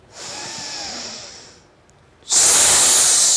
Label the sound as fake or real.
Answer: real